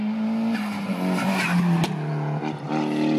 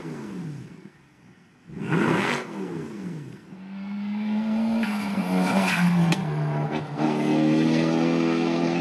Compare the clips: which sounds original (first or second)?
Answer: first